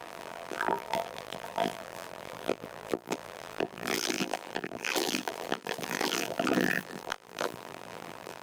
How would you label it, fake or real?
fake